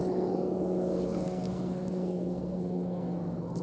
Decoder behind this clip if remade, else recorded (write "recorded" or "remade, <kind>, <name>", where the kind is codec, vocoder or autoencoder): remade, codec, SNAC